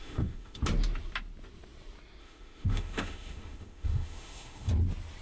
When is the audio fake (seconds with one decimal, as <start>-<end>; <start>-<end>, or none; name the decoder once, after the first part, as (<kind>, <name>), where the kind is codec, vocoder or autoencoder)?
0.0-0.6 (autoencoder, DAC-VAE); 2.2-4.7